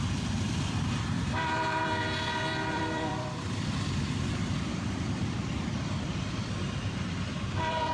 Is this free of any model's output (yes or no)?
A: no